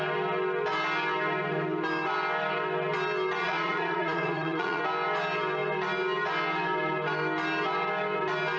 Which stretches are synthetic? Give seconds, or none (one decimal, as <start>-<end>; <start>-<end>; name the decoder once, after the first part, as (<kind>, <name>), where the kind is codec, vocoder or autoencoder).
3.4-4.8 (vocoder, Vocos)